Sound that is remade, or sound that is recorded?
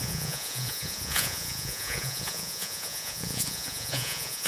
remade